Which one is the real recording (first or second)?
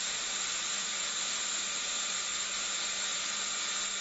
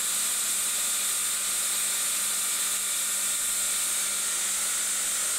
second